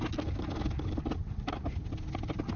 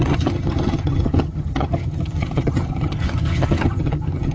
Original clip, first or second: first